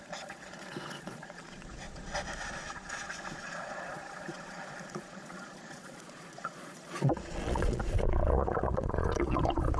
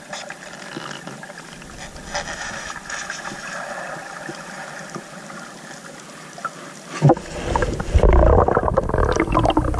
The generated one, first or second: first